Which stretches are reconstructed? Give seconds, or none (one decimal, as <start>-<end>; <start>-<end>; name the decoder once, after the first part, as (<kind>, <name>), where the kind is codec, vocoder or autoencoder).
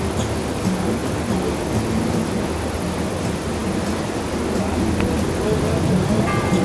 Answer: none